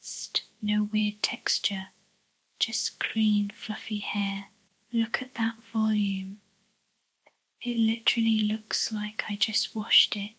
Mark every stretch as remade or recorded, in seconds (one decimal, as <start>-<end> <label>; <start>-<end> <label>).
0.0-10.4 recorded

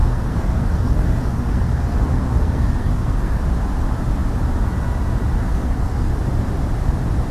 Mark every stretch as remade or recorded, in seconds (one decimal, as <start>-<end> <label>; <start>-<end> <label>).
0.0-3.4 remade; 3.4-5.4 recorded; 5.4-6.1 remade; 6.1-7.3 recorded